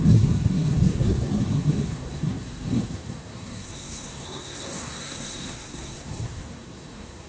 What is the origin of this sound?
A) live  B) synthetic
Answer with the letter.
B